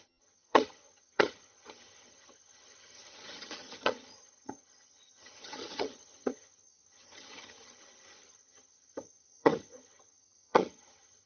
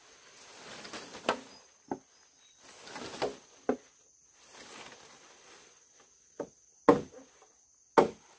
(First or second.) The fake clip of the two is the first